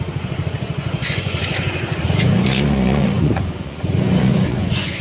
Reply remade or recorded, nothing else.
remade